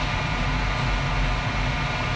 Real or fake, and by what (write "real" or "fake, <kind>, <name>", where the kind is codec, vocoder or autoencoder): real